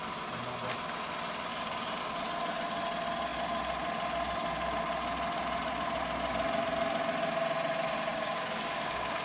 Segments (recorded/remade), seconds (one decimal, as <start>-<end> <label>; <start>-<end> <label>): 0.0-1.5 recorded; 1.5-2.0 remade; 2.0-8.1 recorded; 8.1-9.2 remade